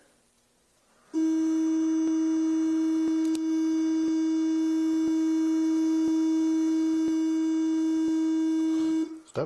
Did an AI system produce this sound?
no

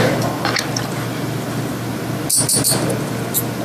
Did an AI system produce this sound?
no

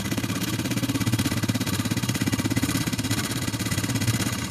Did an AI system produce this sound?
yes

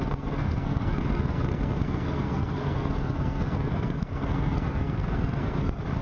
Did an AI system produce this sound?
yes